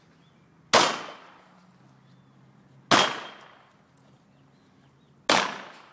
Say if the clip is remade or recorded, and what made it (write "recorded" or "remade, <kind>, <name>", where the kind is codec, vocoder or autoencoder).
recorded